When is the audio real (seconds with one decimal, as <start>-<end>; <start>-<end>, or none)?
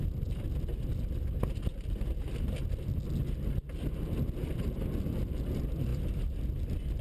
0.0-7.0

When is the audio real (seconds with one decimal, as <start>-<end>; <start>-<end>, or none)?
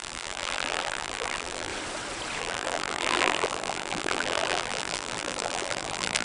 1.7-2.4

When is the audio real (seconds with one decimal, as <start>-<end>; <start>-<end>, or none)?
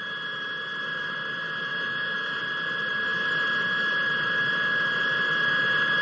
0.0-1.7; 2.4-6.0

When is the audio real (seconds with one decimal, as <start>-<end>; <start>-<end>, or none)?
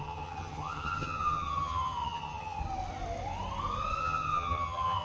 2.6-4.0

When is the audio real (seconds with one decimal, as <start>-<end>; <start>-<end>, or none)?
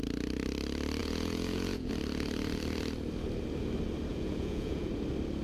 0.0-1.0; 1.9-4.1; 4.9-5.4